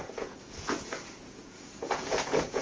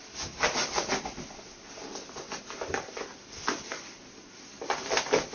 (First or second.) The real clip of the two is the second